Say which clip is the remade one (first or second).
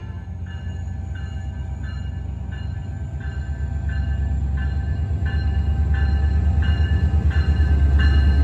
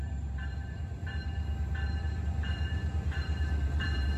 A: second